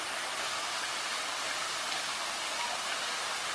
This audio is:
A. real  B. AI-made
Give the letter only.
A